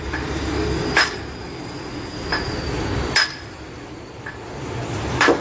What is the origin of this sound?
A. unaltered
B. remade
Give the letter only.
A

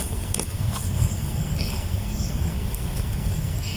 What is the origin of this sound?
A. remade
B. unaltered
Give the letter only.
A